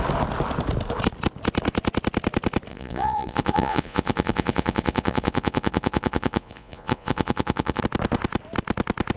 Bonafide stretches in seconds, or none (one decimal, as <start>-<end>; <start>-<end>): 0.0-2.7; 7.8-9.2